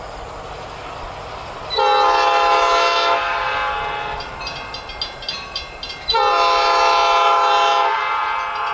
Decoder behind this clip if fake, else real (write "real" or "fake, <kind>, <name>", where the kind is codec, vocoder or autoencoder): real